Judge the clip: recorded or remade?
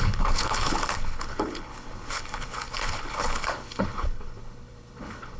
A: remade